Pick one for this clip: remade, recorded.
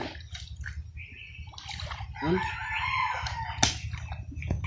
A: recorded